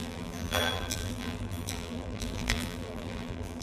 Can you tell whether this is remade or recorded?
remade